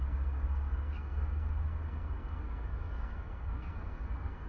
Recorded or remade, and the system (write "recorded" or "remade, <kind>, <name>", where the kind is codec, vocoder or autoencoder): remade, codec, SNAC